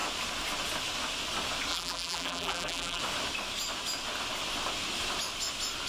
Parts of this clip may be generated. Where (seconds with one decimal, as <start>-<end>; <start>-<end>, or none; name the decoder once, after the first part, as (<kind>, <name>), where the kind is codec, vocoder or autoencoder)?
1.7-3.0 (vocoder, BigVGAN v2)